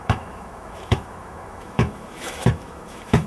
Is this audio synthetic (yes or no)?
yes